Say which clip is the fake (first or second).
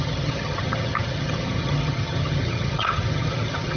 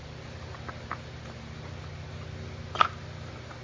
first